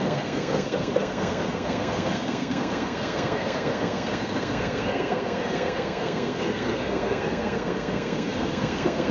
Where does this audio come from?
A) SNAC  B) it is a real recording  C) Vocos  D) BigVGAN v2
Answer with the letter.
A